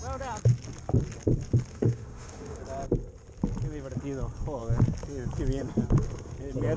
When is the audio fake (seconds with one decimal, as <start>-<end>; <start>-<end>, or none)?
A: 1.7-2.6